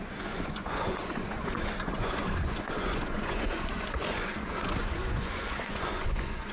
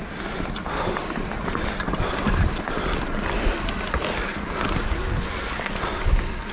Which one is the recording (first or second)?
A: second